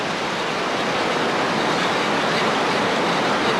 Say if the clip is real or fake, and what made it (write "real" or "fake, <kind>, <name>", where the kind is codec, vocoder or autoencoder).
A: real